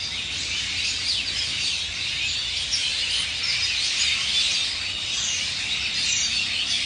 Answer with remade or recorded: recorded